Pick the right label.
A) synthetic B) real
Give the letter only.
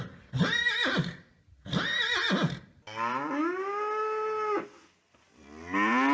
B